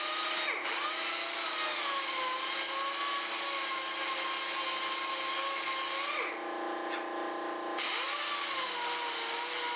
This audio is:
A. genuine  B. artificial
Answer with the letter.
A